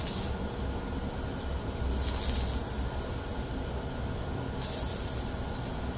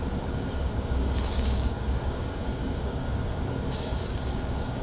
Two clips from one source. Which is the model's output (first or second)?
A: second